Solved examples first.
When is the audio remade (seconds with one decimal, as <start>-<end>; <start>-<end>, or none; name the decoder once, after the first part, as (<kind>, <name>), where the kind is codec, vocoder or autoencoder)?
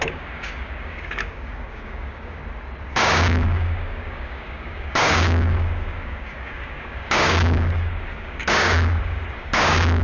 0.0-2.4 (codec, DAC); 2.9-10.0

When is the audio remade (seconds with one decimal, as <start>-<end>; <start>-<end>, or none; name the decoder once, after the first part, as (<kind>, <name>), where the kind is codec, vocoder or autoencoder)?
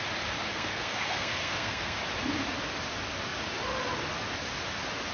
0.5-2.0 (codec, SNAC)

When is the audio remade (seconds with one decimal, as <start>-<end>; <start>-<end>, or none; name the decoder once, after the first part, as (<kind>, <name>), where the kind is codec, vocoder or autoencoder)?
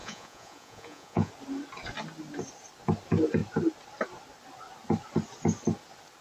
0.0-1.3 (vocoder, Vocos)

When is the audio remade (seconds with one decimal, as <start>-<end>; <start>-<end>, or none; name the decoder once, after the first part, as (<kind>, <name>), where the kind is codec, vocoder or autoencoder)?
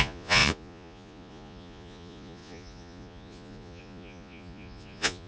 0.0-5.3 (vocoder, Vocos)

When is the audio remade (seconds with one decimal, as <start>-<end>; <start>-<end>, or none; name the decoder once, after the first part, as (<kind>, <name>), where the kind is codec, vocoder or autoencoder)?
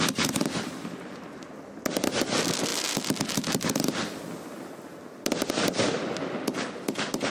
none